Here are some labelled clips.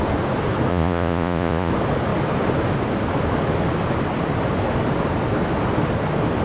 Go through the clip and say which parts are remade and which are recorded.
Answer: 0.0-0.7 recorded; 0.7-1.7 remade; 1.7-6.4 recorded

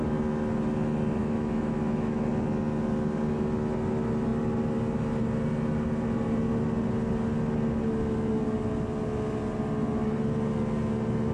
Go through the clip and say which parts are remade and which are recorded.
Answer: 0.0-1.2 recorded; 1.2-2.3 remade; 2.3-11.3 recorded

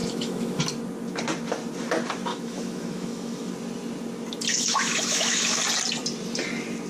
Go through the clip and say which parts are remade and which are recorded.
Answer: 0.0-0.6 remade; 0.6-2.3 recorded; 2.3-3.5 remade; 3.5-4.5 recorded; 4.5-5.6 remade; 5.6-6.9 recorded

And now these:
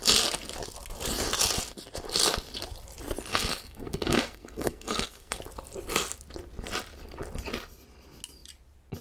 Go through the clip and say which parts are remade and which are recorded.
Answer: 0.0-3.3 recorded; 3.3-5.4 remade; 5.4-9.0 recorded